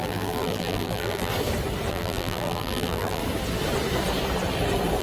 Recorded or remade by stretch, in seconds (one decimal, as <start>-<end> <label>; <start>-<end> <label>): 0.0-1.3 remade; 1.3-1.9 recorded; 1.9-3.2 remade; 3.2-5.0 recorded